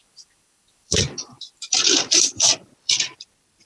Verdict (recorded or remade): remade